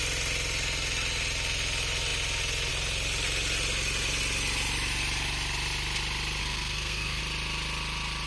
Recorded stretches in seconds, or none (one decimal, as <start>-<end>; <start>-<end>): 0.0-6.4; 7.2-8.3